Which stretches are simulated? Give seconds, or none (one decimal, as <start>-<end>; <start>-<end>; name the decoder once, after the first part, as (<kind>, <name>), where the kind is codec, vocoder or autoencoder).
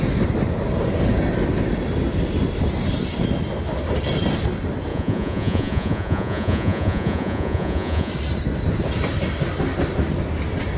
4.9-8.1 (vocoder, Vocos)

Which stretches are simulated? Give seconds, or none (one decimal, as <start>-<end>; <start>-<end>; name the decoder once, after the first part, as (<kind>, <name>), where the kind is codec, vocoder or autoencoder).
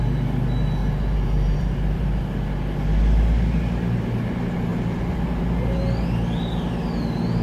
0.8-2.2 (vocoder, BigVGAN v2)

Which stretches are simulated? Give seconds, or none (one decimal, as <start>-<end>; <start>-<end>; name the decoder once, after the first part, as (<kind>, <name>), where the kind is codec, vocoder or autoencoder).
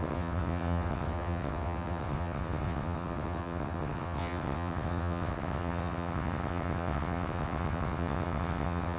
0.0-9.0 (vocoder, WaveNeXt)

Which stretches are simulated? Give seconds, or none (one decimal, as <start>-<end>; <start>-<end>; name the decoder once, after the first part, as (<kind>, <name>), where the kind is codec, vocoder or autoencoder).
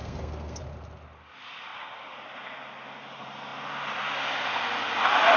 0.0-0.6 (codec, SNAC)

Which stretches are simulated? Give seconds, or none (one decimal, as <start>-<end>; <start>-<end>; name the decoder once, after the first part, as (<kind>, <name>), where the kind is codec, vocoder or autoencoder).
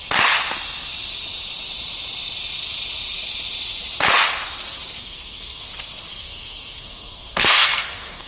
5.0-5.6 (codec, SNAC); 6.1-8.3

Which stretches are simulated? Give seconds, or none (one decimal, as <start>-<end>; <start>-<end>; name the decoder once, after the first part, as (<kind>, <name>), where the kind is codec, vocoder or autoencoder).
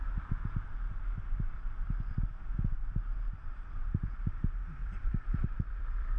3.7-6.2 (vocoder, BigVGAN v2)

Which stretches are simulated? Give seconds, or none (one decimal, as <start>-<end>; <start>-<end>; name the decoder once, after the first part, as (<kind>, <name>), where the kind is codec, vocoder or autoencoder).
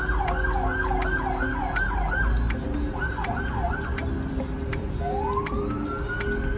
4.0-5.1 (vocoder, BigVGAN v2)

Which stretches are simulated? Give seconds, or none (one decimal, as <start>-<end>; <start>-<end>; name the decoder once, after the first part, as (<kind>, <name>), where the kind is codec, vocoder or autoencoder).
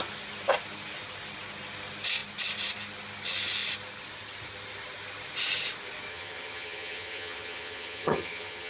6.1-8.7 (vocoder, HiFi-GAN)